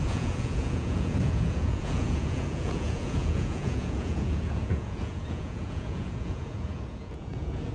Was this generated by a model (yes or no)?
yes